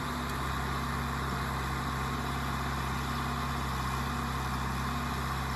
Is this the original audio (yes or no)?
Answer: yes